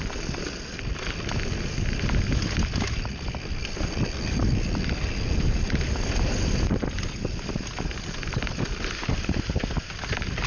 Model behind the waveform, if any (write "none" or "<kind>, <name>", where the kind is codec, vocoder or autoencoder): none